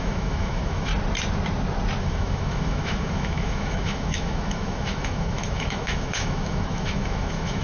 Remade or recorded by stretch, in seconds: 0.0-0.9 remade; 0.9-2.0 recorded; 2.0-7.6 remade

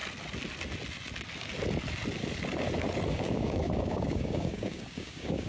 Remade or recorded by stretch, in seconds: 0.0-3.1 recorded; 3.1-5.5 remade